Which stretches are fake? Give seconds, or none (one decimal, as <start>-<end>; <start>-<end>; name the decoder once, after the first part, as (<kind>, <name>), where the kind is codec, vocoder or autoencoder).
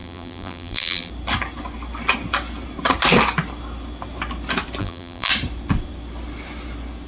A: 0.0-1.1 (vocoder, BigVGAN v2); 4.8-5.3